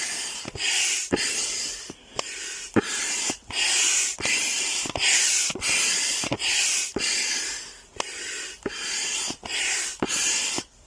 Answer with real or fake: real